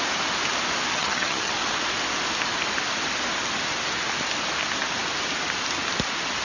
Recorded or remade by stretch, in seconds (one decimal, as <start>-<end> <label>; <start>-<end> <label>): 0.0-0.9 recorded; 0.9-1.5 remade; 1.5-6.4 recorded